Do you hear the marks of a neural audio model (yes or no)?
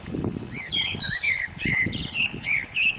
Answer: yes